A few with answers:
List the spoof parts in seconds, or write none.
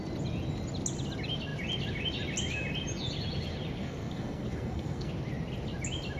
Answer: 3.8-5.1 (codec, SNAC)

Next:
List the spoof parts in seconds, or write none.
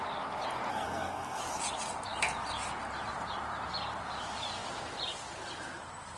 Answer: 0.7-1.4 (codec, SNAC)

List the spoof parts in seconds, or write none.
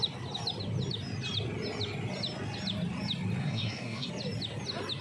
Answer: 3.4-4.1 (codec, SNAC)